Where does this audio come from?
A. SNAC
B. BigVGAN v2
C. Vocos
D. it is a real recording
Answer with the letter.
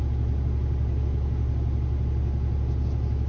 D